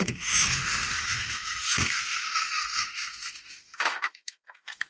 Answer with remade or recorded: remade